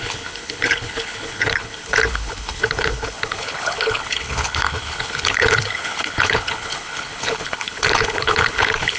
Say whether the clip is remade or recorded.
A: remade